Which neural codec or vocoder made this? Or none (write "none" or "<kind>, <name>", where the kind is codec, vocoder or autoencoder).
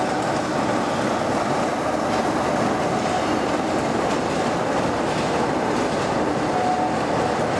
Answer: none